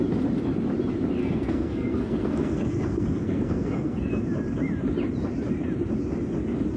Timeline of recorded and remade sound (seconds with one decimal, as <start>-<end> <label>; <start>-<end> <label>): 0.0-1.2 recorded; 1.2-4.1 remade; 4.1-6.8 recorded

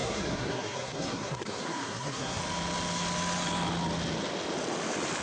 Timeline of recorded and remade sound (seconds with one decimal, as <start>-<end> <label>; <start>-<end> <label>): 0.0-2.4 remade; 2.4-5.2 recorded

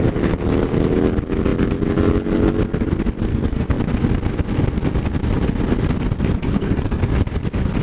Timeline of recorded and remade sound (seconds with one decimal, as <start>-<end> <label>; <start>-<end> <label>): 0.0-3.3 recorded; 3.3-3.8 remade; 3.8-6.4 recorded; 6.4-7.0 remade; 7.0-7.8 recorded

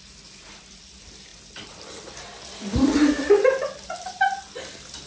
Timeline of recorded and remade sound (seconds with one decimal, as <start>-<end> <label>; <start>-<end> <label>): 0.0-5.1 recorded

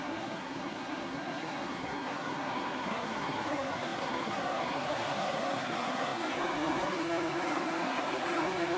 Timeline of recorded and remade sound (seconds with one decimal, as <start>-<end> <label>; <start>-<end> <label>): 0.0-8.8 remade

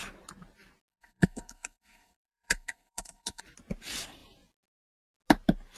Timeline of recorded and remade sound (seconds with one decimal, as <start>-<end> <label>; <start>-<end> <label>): 0.0-0.9 recorded; 0.9-3.4 remade; 3.4-5.8 recorded